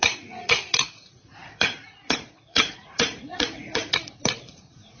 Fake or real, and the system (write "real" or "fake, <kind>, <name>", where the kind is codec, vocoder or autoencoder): fake, vocoder, Vocos